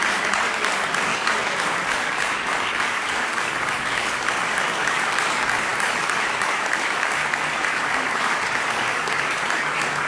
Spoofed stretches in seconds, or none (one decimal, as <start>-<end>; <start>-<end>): 0.0-10.1